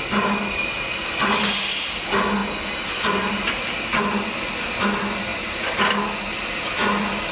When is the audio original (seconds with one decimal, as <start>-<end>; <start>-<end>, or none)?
0.0-7.3